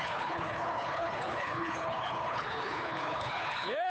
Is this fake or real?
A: fake